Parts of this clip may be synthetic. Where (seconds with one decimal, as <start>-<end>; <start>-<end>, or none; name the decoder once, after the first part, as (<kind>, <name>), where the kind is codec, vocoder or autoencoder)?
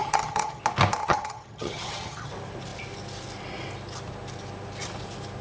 0.0-0.6 (vocoder, HiFi-GAN); 1.0-2.3